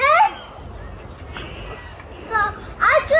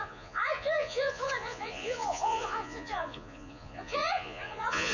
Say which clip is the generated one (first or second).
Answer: second